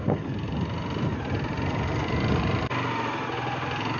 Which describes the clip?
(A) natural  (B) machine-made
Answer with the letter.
A